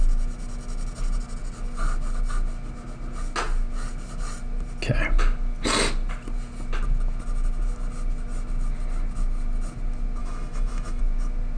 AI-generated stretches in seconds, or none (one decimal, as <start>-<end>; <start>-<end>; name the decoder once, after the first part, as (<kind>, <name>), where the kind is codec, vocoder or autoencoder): 10.2-11.0 (autoencoder, DAC-VAE)